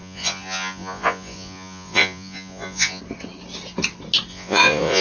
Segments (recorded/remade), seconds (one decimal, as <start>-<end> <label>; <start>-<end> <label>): 0.0-3.0 remade; 3.0-4.3 recorded; 4.3-5.0 remade